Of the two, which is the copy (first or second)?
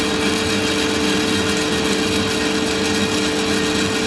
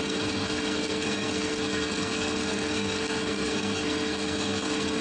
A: second